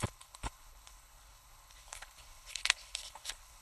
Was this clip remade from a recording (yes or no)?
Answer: yes